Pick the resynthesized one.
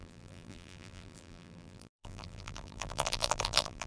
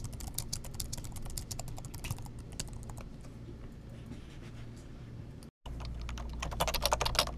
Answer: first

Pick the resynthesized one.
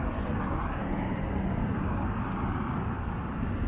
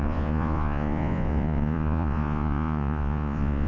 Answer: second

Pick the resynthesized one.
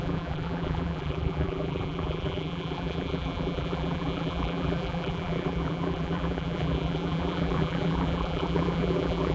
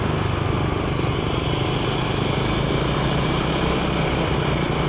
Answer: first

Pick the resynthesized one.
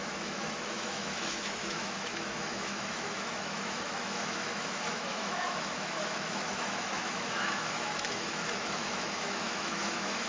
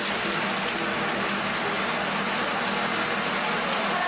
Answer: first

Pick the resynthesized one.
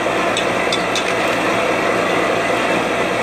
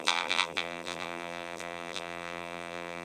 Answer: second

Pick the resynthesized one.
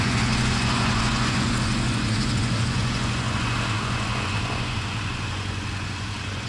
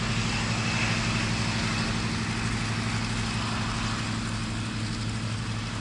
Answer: first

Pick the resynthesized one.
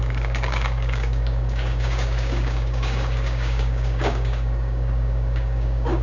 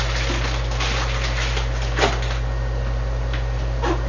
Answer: first